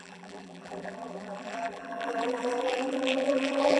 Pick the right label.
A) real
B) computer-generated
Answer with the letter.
B